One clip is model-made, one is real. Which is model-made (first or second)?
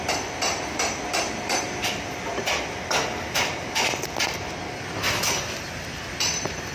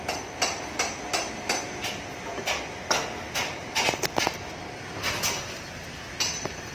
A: first